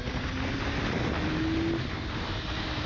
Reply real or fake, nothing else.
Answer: real